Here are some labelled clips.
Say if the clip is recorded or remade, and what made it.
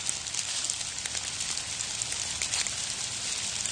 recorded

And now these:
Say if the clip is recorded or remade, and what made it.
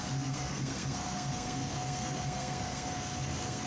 remade, codec, SNAC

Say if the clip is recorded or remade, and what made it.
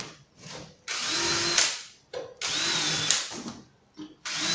recorded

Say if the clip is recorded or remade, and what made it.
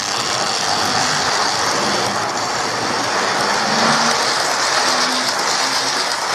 recorded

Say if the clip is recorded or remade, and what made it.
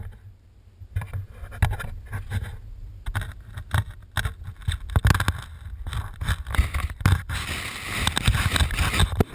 recorded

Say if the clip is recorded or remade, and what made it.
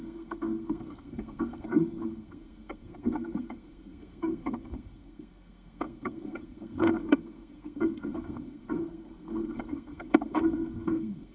remade, codec, SNAC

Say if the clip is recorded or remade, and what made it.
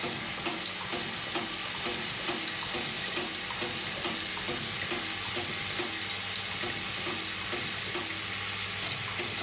recorded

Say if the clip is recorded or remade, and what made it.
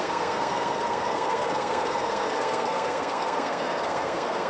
remade, codec, SNAC